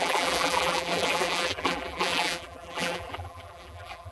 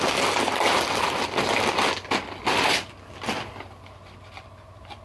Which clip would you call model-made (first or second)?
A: first